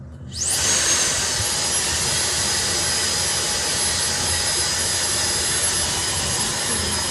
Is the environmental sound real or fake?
real